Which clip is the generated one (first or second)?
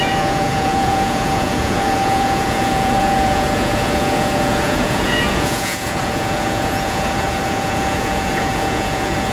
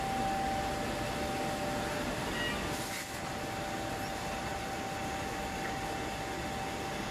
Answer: first